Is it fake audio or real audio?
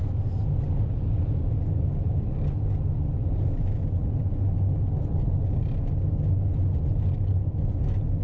real